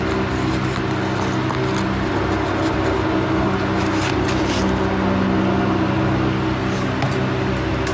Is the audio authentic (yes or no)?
yes